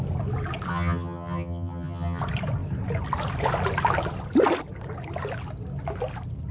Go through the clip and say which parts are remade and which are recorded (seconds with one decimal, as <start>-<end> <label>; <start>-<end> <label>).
0.0-0.7 recorded; 0.7-2.2 remade; 2.2-6.5 recorded